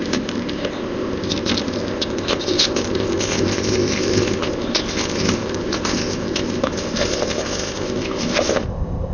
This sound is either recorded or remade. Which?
remade